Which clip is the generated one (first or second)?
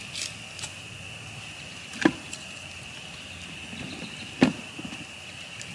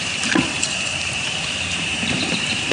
second